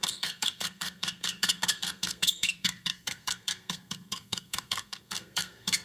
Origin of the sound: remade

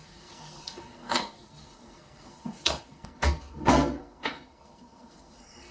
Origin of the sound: remade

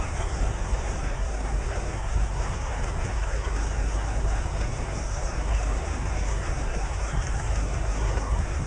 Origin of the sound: remade